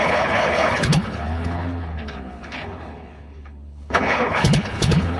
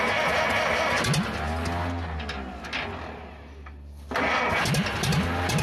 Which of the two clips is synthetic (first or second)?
first